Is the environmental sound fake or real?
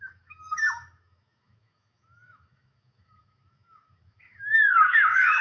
fake